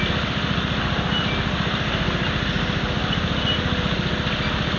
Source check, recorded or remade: recorded